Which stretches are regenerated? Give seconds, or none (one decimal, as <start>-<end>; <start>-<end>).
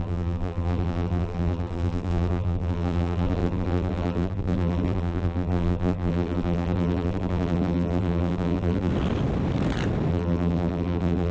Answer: 0.0-8.9; 10.1-11.3